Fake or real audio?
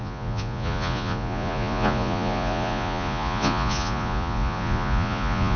fake